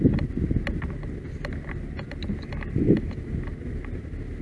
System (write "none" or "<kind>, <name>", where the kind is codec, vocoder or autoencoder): none